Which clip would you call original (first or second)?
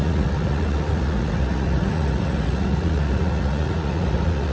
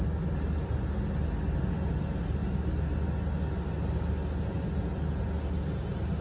second